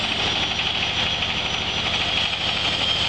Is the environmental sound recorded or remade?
recorded